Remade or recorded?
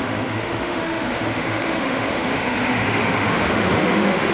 remade